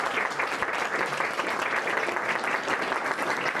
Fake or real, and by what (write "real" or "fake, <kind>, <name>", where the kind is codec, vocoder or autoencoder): real